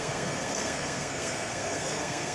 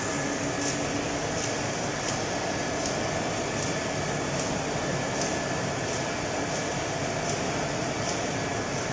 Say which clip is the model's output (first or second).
first